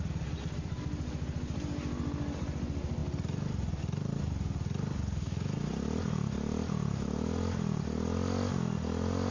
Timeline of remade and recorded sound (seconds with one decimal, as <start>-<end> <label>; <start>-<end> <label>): 0.0-9.3 recorded